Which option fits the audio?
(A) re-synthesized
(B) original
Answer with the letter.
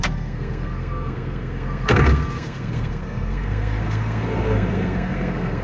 A